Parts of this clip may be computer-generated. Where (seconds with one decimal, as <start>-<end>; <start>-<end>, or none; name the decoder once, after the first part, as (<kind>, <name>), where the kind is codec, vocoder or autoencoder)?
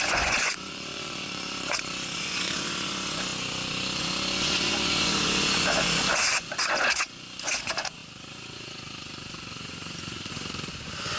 0.0-11.2 (vocoder, Vocos)